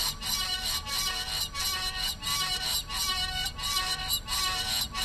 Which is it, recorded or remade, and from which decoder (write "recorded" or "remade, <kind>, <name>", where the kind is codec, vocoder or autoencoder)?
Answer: recorded